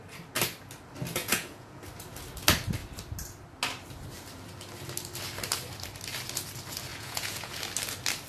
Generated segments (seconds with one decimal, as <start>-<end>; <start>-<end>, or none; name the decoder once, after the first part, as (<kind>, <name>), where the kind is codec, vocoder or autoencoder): 1.2-1.8 (vocoder, Vocos); 6.9-7.6